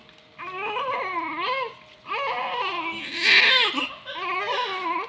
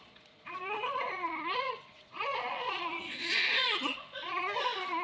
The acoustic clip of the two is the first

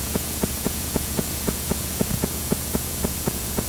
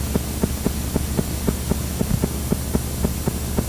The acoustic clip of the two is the second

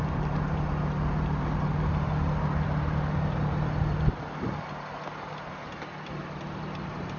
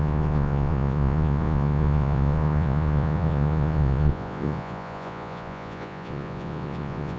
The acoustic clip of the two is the first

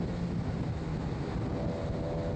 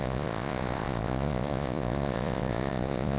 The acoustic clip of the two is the first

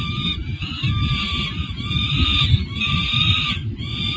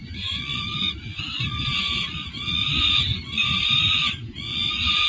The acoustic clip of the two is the first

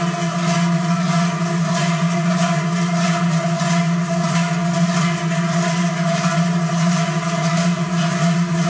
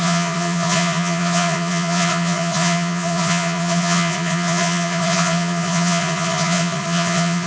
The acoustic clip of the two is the first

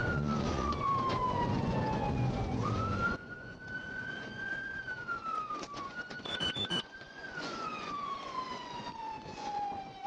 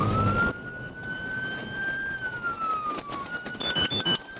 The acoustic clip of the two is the second